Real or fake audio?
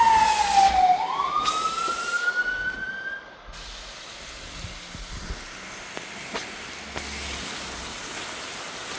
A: real